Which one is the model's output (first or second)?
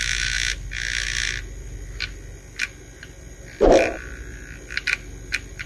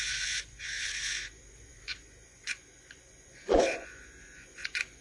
second